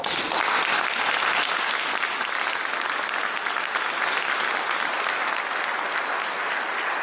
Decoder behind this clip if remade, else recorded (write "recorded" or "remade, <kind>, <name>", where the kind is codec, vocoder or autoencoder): recorded